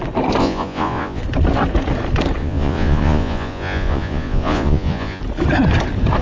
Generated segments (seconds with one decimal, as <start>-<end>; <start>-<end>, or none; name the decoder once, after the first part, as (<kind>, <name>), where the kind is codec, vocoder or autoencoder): 0.4-1.2 (vocoder, Vocos); 2.4-5.2